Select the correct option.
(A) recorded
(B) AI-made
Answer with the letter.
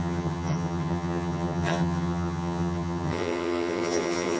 B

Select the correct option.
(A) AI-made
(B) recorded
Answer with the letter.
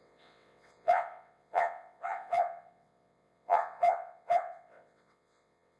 A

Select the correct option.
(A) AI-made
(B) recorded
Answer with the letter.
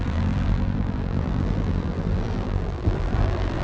A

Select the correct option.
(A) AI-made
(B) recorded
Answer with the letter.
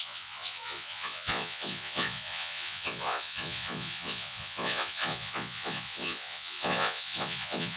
A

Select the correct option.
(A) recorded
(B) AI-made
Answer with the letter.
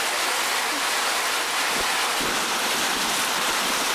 A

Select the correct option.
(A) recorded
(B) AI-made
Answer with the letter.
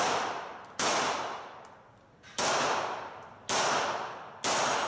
A